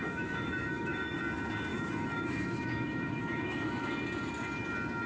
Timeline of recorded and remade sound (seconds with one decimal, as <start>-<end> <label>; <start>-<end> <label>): 0.0-1.2 remade; 1.2-1.7 recorded; 1.7-3.9 remade; 3.9-5.1 recorded